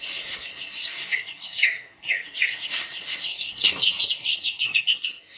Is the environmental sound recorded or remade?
remade